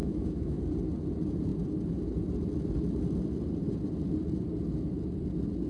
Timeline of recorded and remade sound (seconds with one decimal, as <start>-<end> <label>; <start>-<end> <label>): 0.0-0.6 remade; 0.6-5.7 recorded